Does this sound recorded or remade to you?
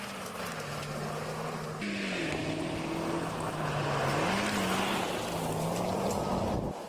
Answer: recorded